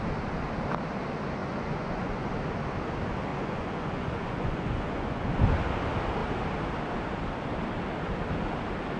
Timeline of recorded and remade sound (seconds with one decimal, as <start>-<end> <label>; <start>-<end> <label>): 0.0-1.4 recorded; 1.4-2.3 remade; 2.3-3.3 recorded; 3.3-5.3 remade; 5.3-9.0 recorded